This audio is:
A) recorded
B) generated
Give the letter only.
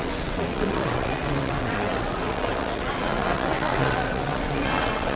B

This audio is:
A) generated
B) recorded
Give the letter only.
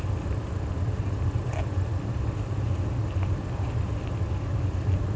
B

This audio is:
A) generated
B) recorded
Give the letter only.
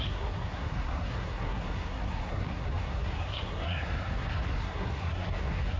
A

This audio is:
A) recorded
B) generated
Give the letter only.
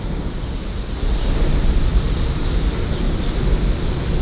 A